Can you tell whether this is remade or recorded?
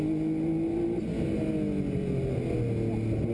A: recorded